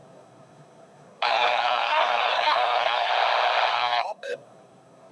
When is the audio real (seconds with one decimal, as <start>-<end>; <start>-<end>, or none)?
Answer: 3.1-3.7